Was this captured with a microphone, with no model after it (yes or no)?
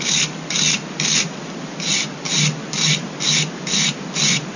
yes